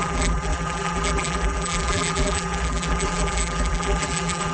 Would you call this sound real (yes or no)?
no